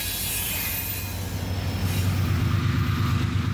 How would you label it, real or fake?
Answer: real